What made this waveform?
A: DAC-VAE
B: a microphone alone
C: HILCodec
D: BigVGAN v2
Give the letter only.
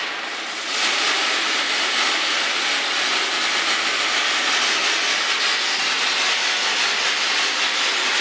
B